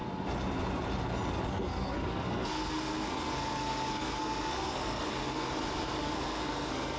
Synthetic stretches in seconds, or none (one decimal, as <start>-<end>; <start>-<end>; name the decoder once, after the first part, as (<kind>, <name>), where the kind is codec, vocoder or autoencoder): 1.5-5.5 (codec, SNAC); 6.0-7.0